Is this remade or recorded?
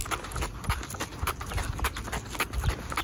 recorded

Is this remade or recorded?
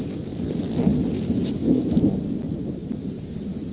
recorded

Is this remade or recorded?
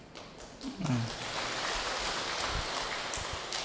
recorded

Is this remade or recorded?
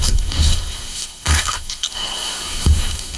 remade